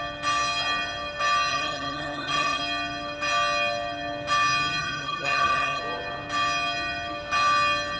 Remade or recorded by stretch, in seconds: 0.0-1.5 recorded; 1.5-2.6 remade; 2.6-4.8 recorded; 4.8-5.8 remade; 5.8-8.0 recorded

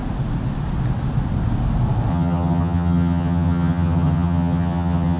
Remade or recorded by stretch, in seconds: 0.0-2.1 recorded; 2.1-5.2 remade

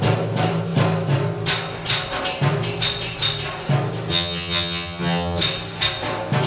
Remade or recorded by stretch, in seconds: 0.0-4.1 recorded; 4.1-5.4 remade; 5.4-6.5 recorded

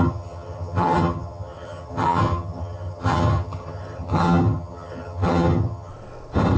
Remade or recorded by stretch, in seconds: 0.0-5.9 remade; 5.9-6.6 recorded

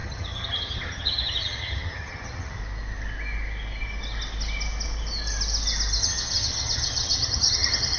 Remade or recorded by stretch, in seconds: 0.0-2.6 remade; 2.6-6.0 recorded; 6.0-8.0 remade

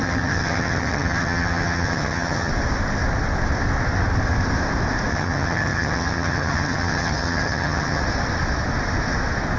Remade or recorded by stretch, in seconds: 0.0-2.5 remade; 2.5-5.1 recorded; 5.1-8.0 remade; 8.0-9.6 recorded

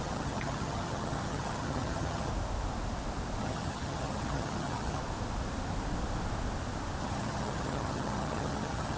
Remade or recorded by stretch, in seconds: 0.0-2.3 remade; 2.3-3.4 recorded; 3.4-5.0 remade; 5.0-7.0 recorded; 7.0-9.0 remade